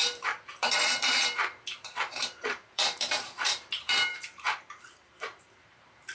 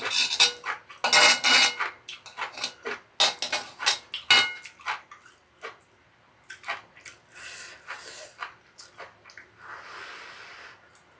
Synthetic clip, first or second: first